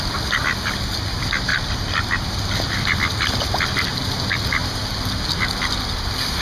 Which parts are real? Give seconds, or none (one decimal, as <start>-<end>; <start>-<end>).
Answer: 0.0-1.5; 3.6-6.4